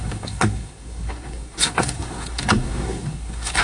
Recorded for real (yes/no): no